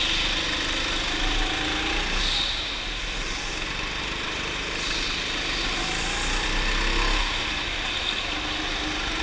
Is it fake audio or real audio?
real